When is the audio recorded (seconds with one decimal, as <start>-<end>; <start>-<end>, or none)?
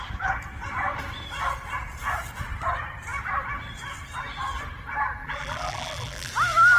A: 0.0-5.2; 6.3-6.8